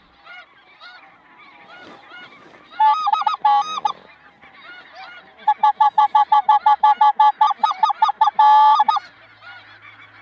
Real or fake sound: real